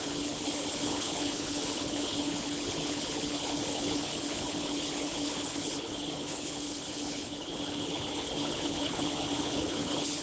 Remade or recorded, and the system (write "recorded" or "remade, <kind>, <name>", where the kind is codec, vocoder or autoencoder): remade, codec, HILCodec